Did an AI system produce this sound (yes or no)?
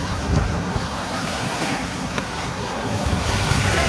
yes